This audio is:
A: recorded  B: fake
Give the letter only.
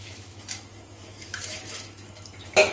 B